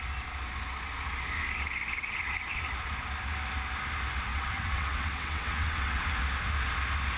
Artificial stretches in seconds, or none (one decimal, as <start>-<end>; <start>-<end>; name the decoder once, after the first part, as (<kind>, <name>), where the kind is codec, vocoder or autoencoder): 4.3-6.0 (vocoder, WaveNeXt)